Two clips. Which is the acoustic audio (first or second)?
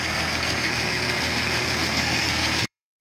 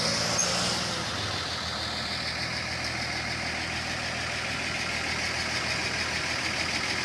second